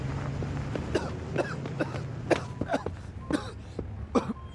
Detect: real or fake real